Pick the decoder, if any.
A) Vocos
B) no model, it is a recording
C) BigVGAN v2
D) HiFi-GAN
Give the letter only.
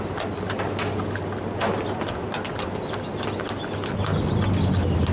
B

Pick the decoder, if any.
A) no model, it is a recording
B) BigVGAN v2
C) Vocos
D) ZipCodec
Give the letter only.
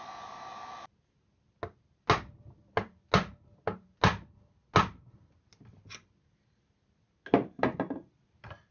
A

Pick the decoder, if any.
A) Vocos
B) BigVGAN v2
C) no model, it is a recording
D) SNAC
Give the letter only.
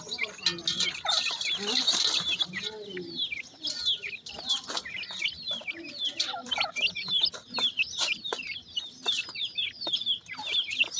C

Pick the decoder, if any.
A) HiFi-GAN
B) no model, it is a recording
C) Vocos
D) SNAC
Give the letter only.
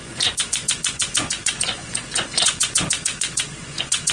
C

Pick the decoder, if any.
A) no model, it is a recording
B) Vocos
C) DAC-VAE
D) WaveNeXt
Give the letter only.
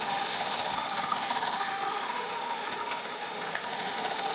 C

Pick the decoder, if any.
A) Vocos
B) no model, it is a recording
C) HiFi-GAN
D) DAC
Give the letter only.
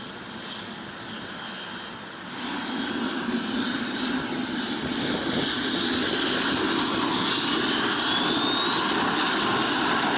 B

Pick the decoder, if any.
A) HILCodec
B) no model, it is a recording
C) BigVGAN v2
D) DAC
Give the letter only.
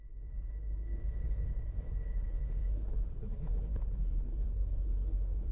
A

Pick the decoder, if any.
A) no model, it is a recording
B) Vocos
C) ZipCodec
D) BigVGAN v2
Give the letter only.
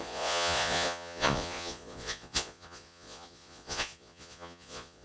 B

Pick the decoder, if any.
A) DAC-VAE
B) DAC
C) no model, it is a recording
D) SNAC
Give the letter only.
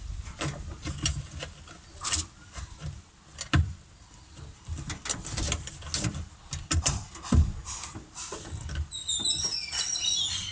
C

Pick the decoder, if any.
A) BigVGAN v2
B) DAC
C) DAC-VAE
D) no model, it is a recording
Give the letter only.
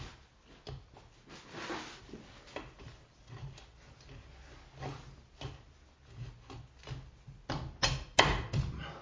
D